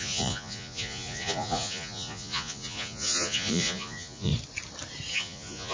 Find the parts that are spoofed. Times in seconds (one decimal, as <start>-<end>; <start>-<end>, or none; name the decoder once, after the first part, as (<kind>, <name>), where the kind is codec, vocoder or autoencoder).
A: 0.0-4.3 (vocoder, Vocos); 5.1-5.7